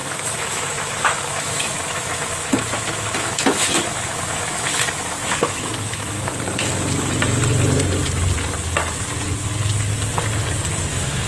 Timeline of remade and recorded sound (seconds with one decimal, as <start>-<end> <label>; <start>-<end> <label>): 0.0-6.3 remade; 6.3-10.9 recorded; 10.9-11.3 remade